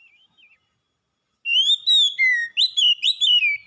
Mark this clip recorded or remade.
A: recorded